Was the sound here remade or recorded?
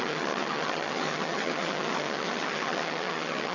remade